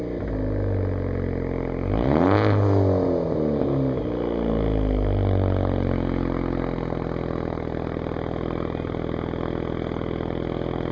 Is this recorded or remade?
recorded